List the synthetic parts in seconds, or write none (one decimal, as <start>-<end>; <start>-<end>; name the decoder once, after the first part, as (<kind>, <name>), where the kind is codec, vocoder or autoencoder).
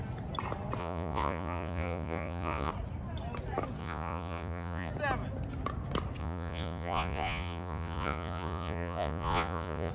0.8-2.7 (vocoder, Vocos); 3.8-4.9; 6.2-9.9